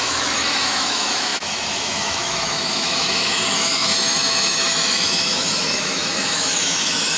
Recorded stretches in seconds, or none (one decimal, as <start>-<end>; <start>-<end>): none